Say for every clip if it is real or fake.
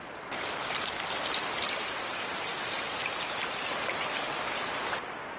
real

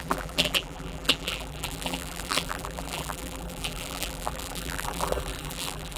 fake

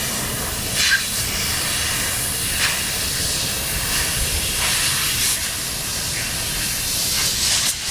real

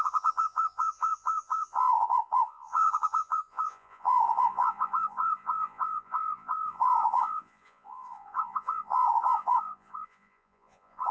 fake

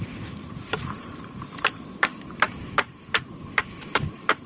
fake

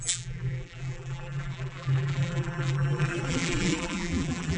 fake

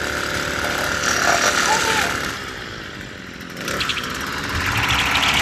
real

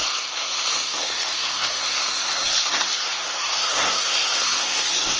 fake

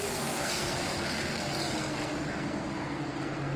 fake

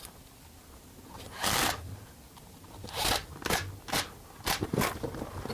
real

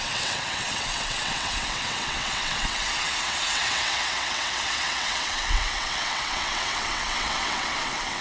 fake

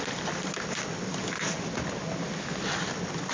real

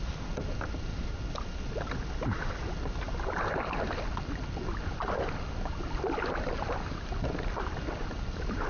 real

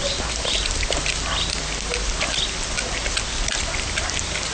real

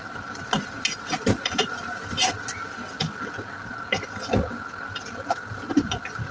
real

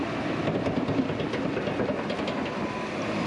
fake